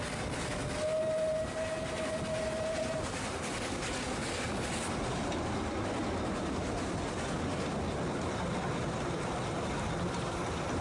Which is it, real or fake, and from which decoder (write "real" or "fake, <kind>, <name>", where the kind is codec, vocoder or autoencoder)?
real